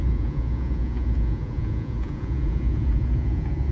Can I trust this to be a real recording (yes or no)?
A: no